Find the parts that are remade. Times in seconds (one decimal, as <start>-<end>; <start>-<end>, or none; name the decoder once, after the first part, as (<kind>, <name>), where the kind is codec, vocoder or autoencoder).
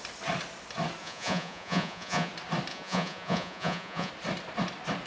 1.0-2.3 (vocoder, Vocos); 2.7-4.1